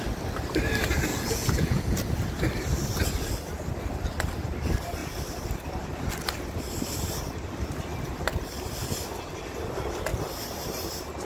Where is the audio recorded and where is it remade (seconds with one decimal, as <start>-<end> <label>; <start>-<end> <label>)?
0.0-1.1 recorded; 1.1-2.1 remade; 2.1-11.3 recorded